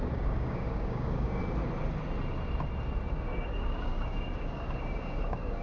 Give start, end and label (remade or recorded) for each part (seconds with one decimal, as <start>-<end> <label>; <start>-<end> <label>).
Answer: 0.0-1.4 remade; 1.4-3.1 recorded; 3.1-5.6 remade